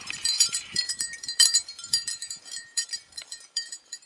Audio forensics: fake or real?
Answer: fake